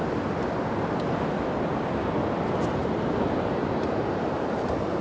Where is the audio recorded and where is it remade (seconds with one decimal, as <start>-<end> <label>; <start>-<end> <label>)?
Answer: 0.0-2.8 recorded; 2.8-5.0 remade